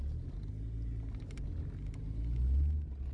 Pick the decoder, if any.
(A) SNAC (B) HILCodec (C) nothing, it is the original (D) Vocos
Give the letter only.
C